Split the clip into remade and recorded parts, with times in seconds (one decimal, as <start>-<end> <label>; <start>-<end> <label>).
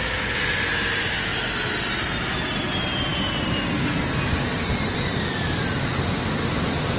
0.0-7.0 recorded